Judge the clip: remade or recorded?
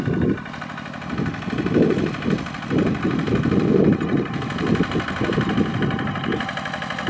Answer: recorded